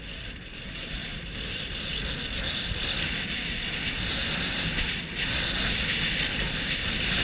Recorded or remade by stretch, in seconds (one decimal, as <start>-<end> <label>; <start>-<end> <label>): 0.0-1.0 recorded; 1.0-3.8 remade; 3.8-7.2 recorded